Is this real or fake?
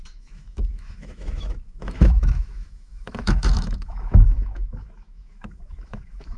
fake